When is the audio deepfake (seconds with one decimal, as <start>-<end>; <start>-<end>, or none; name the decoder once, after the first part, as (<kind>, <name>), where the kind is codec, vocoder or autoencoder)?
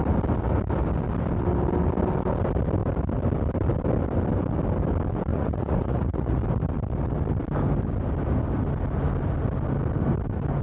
5.3-6.4 (vocoder, Vocos)